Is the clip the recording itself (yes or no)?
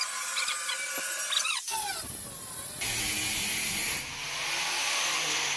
yes